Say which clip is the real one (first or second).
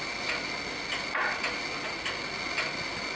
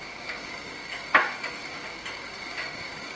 first